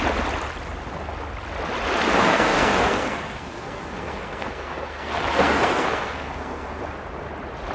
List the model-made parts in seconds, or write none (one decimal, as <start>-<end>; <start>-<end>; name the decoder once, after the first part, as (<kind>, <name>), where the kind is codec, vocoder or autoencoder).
2.2-6.8 (codec, SNAC)